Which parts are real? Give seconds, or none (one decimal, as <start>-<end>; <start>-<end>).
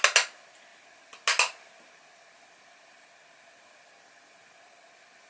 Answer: 0.0-5.3